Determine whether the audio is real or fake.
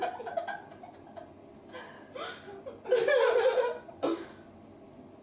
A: real